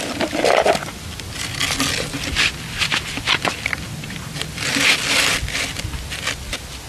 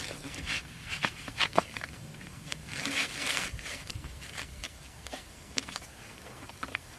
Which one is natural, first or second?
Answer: first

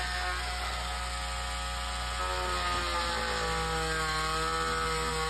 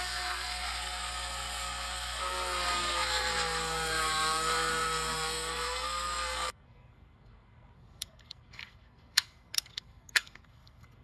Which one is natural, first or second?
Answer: first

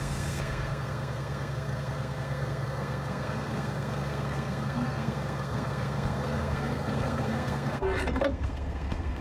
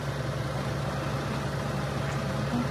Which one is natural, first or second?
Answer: second